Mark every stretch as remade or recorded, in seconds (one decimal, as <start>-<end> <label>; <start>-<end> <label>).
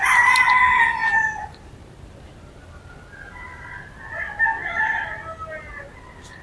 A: 0.0-6.4 recorded